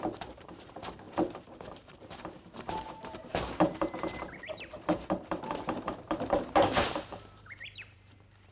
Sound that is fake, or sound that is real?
fake